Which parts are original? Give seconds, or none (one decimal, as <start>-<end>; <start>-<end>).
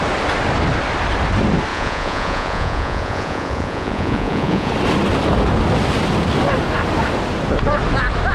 0.0-1.7; 4.7-8.3